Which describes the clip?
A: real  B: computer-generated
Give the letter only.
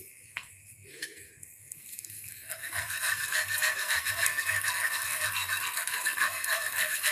B